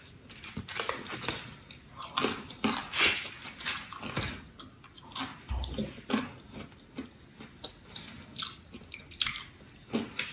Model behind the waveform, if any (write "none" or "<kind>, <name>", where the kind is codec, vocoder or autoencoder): none